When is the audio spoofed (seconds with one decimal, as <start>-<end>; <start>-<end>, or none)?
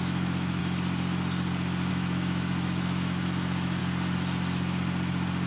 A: 0.0-0.6; 1.9-3.8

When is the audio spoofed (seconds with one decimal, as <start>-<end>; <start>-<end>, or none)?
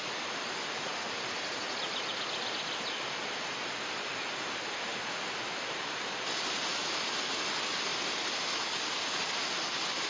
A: none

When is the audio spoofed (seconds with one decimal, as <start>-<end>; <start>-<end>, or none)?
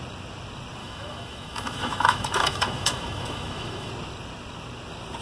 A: 0.8-3.9